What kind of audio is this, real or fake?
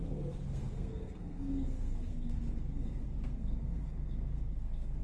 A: fake